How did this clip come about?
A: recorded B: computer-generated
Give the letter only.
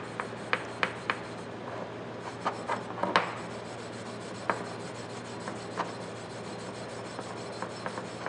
A